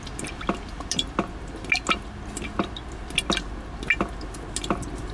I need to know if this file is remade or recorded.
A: recorded